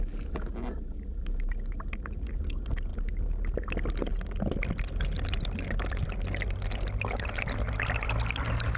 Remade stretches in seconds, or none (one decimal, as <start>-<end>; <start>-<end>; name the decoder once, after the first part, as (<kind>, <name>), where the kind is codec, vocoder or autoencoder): none